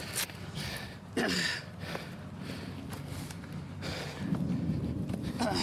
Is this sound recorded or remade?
recorded